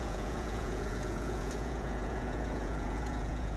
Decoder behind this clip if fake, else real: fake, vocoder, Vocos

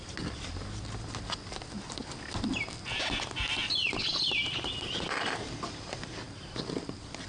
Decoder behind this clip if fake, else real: real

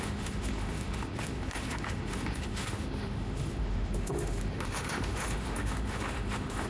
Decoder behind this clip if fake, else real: fake, autoencoder, DAC-VAE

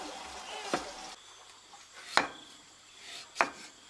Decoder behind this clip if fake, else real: real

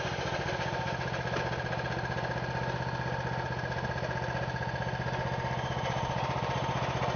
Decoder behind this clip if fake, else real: real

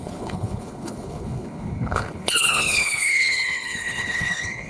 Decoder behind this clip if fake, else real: fake, codec, HILCodec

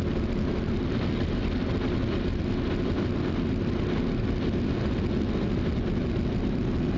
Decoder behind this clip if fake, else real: real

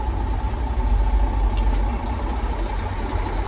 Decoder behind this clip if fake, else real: real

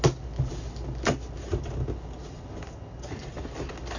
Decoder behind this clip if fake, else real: real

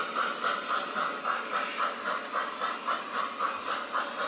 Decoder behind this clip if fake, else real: real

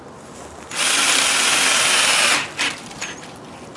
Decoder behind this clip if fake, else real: real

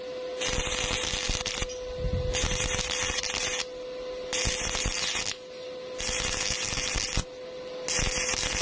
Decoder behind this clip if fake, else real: real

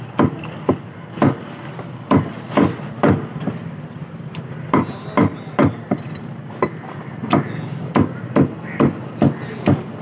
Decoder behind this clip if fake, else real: real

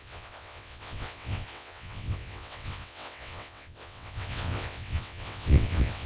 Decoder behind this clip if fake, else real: fake, vocoder, WaveNeXt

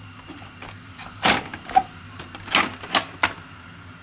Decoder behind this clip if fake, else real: real